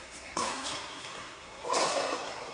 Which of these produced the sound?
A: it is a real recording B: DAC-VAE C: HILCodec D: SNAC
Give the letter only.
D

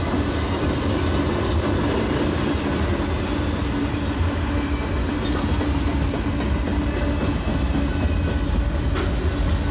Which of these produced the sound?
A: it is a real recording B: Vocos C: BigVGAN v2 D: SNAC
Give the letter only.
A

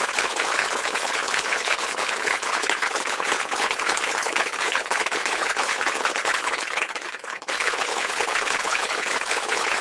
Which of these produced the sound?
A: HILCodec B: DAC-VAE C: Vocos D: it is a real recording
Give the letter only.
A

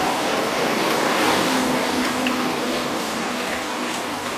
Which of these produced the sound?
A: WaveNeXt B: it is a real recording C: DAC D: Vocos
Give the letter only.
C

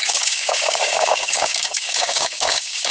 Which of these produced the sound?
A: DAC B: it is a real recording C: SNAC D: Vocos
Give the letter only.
A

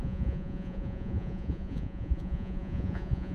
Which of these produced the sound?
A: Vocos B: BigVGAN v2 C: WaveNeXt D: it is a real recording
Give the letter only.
A